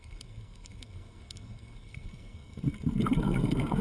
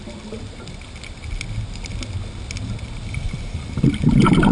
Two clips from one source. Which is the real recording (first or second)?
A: second